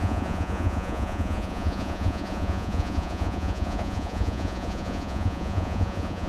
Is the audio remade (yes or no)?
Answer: yes